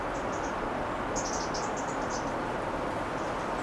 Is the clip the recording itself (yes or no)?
yes